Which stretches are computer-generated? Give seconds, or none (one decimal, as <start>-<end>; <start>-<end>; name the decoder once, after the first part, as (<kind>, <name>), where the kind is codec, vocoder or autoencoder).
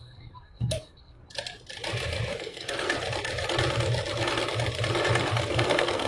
0.0-1.2 (codec, SNAC); 2.4-2.9; 5.5-6.1